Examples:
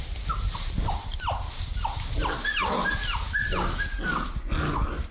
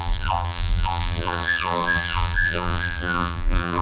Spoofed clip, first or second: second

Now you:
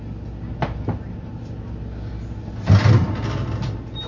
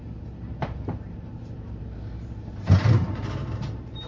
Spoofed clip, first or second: second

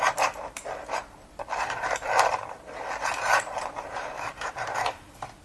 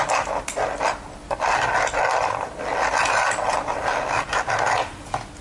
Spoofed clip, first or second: first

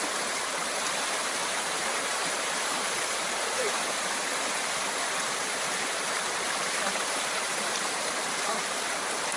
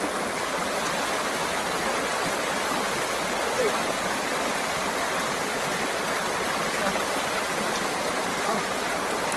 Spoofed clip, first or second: first